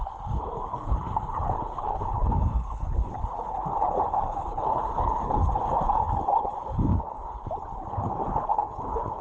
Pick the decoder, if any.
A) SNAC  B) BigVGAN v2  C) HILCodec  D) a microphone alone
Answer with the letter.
C